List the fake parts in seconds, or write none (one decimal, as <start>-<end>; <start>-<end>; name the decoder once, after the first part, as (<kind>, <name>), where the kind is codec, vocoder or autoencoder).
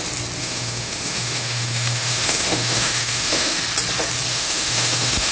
0.4-3.6 (autoencoder, DAC-VAE); 4.3-5.3